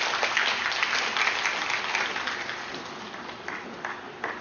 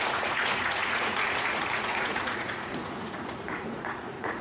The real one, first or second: first